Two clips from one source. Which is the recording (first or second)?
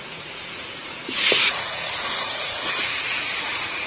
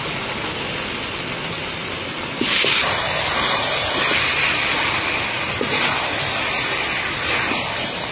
second